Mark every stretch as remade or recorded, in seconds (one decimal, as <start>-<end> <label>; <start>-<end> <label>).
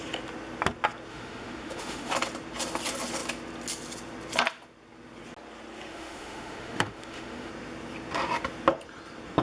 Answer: 0.0-1.1 recorded; 1.1-2.1 remade; 2.1-5.9 recorded; 5.9-7.5 remade; 7.5-9.4 recorded